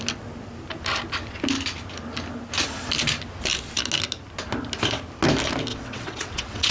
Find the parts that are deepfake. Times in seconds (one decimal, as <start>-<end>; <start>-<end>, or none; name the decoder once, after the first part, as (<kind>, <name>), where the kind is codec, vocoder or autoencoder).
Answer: 5.7-6.7 (vocoder, WaveNeXt)